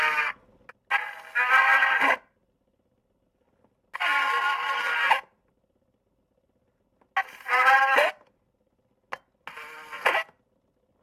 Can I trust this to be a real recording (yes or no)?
yes